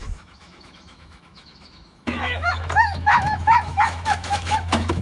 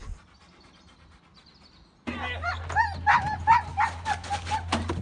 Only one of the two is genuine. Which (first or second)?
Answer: second